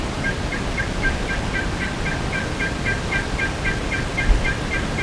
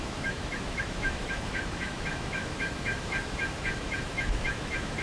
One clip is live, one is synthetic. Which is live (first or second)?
first